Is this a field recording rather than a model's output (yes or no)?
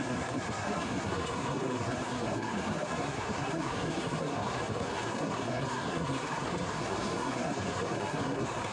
no